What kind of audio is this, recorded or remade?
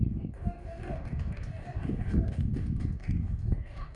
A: remade